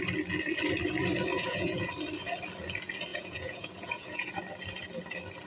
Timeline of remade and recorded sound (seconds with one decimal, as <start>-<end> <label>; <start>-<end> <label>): 0.0-1.3 recorded; 1.3-1.9 remade; 1.9-3.1 recorded; 3.1-4.4 remade; 4.4-5.5 recorded

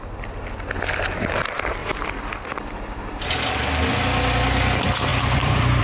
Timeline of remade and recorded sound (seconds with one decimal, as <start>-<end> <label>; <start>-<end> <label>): 0.0-1.8 recorded; 1.8-3.5 remade; 3.5-5.1 recorded; 5.1-5.8 remade

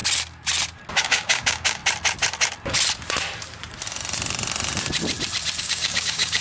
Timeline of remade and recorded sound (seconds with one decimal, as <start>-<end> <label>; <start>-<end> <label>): 0.0-1.0 recorded; 1.0-1.8 remade; 1.8-5.6 recorded; 5.6-6.4 remade

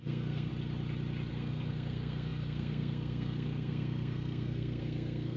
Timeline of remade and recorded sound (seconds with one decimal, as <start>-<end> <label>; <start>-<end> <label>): 0.0-0.5 remade; 0.5-1.3 recorded; 1.3-5.4 remade

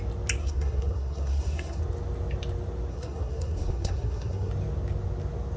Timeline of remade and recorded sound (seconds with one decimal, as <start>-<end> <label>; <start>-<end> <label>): 0.0-0.4 recorded; 0.4-1.8 remade; 1.8-2.9 recorded; 2.9-4.5 remade; 4.5-5.6 recorded